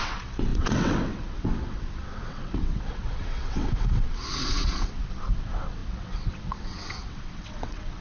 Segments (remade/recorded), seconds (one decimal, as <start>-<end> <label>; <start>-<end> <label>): 0.0-8.0 remade